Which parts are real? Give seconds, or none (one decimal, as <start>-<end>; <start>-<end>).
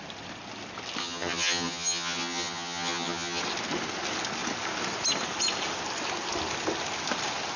0.0-1.0; 3.4-7.6